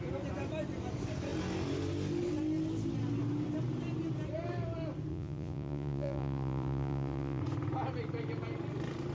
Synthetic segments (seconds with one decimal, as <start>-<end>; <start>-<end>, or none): 5.1-7.4